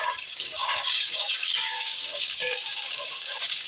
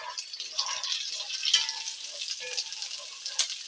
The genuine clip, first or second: second